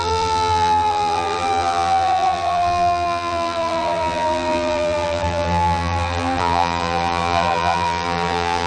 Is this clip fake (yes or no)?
yes